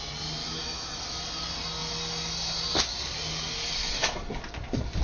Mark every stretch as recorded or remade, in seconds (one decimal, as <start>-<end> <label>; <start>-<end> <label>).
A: 0.0-0.4 recorded; 0.4-1.0 remade; 1.0-3.8 recorded; 3.8-4.3 remade; 4.3-5.0 recorded